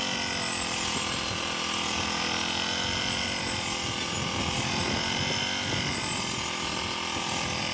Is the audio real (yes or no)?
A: yes